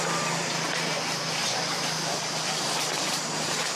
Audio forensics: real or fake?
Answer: fake